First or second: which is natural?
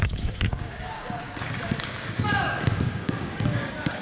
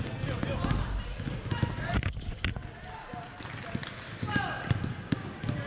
second